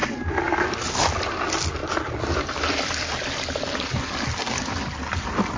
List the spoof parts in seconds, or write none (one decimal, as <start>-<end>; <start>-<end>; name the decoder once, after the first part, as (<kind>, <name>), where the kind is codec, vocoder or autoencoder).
none